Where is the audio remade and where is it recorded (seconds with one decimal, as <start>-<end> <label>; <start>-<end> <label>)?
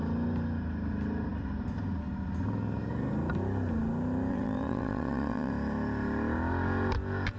0.0-4.3 recorded; 4.3-5.5 remade; 5.5-7.4 recorded